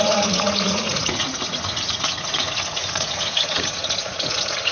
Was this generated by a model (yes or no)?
yes